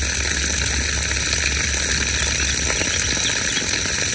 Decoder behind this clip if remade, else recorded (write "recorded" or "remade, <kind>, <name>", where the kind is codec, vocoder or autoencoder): recorded